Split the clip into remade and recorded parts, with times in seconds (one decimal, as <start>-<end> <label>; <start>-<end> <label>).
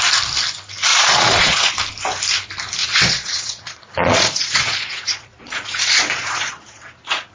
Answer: 0.0-0.9 recorded; 0.9-1.7 remade; 1.7-2.8 recorded; 2.8-7.3 remade